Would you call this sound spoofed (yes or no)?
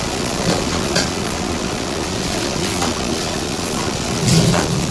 yes